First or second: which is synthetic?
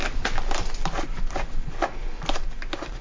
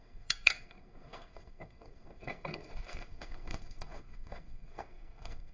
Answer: second